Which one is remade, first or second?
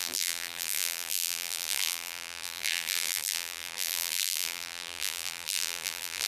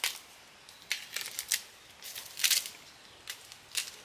first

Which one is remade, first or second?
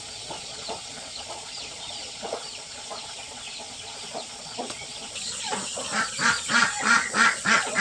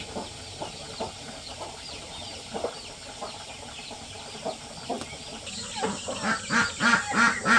first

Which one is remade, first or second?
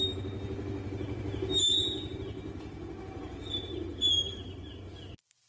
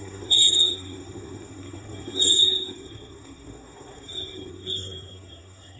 second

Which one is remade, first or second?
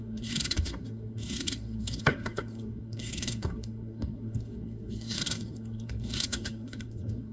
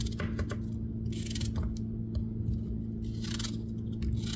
first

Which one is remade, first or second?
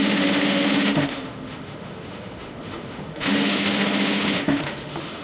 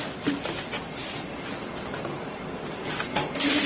first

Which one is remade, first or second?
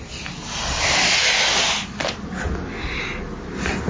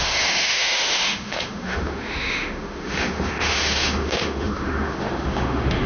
second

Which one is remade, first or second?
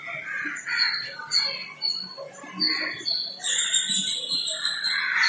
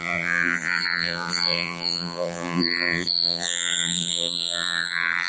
second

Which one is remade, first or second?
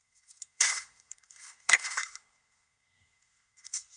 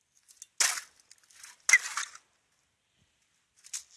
first